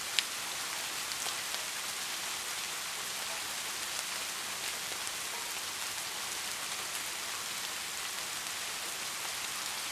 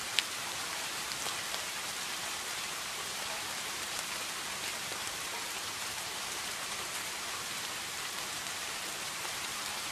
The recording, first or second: first